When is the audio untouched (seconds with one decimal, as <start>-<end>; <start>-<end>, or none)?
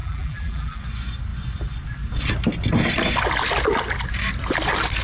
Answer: 0.8-5.0